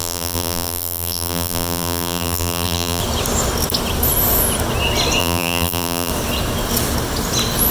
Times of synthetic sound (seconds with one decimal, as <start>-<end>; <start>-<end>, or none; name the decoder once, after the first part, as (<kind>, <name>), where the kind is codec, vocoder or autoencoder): 0.0-3.0 (vocoder, BigVGAN v2); 5.2-6.1